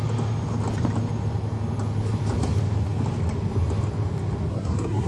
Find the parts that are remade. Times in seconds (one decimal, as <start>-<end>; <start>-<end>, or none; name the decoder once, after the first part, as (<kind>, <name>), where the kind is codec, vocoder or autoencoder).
4.5-5.1 (codec, SNAC)

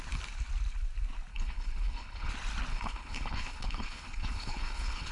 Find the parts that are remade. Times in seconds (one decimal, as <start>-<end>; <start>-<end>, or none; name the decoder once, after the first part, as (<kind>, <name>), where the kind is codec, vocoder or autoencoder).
1.3-2.3 (codec, HILCodec); 2.7-5.1